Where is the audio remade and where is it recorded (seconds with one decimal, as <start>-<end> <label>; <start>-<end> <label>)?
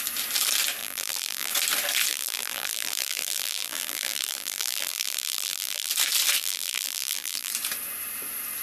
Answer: 0.0-0.8 recorded; 0.8-1.5 remade; 1.5-2.1 recorded; 2.1-5.9 remade; 5.9-6.4 recorded; 6.4-7.5 remade; 7.5-8.6 recorded